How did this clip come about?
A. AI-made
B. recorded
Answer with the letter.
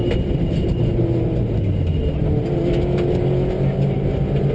B